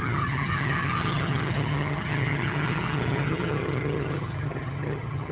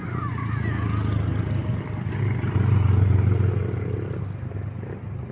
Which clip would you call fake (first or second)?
first